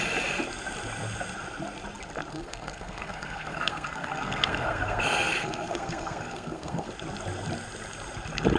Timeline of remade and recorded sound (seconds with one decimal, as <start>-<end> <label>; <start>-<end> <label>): 0.0-2.3 recorded; 2.3-6.9 remade; 6.9-8.6 recorded